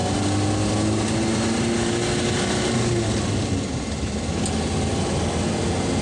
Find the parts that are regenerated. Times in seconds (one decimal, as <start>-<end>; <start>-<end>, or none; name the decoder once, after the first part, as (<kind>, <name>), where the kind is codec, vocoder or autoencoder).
none